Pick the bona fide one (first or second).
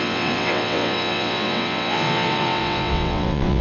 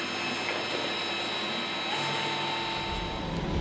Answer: second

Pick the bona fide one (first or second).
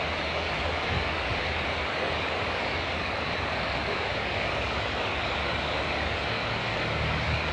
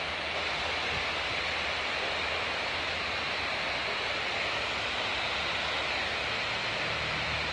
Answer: second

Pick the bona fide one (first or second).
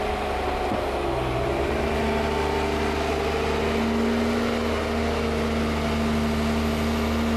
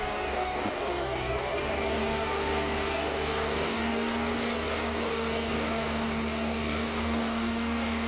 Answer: first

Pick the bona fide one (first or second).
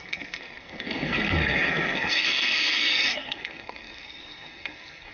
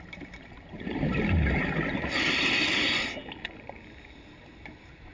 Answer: second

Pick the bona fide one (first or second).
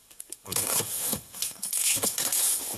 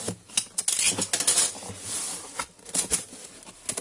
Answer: second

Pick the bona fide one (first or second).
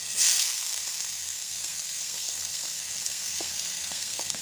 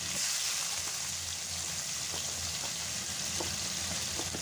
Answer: second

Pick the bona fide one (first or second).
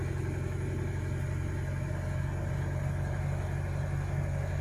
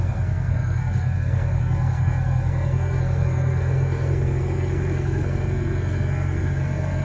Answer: first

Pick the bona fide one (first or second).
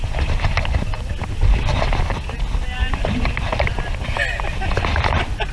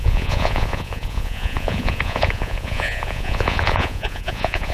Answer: first